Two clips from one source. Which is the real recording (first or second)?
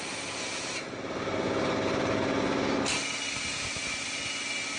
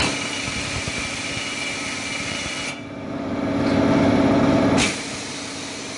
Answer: first